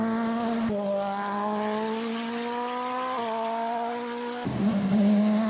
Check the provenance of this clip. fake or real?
real